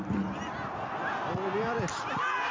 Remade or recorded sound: recorded